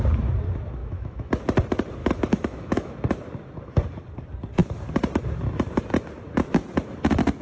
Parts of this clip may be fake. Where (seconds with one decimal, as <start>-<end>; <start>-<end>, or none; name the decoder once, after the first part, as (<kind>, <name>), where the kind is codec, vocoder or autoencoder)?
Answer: 0.8-1.3 (autoencoder, DAC-VAE); 2.0-2.9